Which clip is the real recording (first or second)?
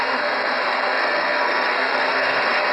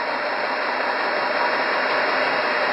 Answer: second